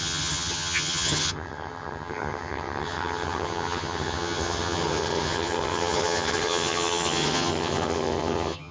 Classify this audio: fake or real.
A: fake